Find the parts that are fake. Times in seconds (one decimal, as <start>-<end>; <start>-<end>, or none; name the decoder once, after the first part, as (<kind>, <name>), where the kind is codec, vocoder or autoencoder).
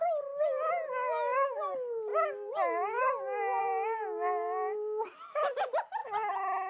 none